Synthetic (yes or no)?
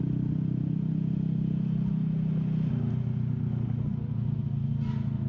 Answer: no